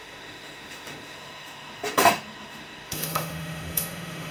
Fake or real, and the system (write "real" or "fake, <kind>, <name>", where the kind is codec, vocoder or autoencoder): fake, autoencoder, DAC-VAE